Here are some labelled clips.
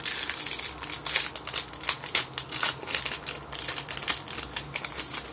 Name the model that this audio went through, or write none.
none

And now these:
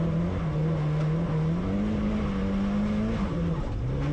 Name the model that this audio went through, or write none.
none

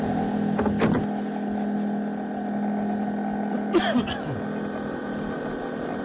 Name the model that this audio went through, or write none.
none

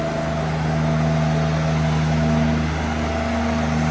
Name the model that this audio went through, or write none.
none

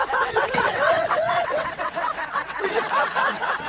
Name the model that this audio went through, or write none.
vocoder, WaveNeXt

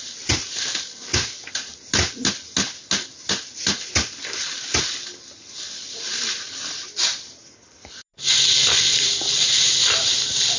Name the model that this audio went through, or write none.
none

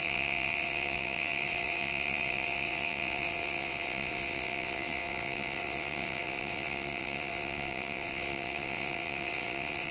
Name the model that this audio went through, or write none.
vocoder, WaveNeXt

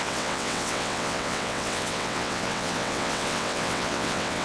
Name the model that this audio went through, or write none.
vocoder, WaveNeXt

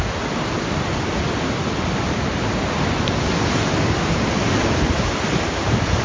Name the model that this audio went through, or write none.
none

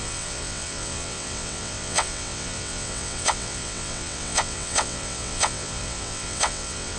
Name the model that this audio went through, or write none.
vocoder, WaveNeXt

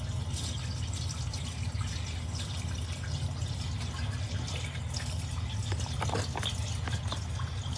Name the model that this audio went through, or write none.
none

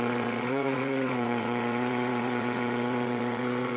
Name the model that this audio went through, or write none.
vocoder, WaveNeXt